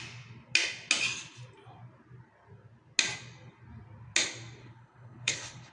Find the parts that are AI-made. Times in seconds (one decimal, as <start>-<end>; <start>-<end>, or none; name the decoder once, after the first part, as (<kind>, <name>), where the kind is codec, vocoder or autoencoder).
4.6-5.7 (codec, HILCodec)